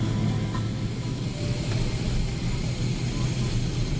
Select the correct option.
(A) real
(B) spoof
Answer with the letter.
A